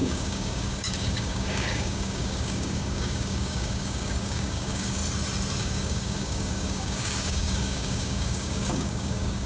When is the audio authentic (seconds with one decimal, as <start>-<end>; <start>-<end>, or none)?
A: 5.0-5.6